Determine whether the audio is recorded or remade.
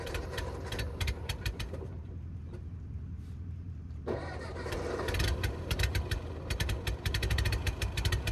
remade